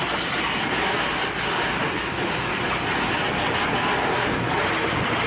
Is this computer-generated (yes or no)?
no